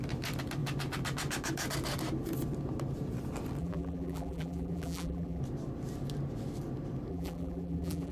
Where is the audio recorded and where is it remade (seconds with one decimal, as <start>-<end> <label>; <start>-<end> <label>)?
0.0-3.6 recorded; 3.6-5.4 remade; 5.4-7.1 recorded; 7.1-8.1 remade